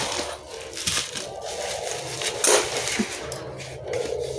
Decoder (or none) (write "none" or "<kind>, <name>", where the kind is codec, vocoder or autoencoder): none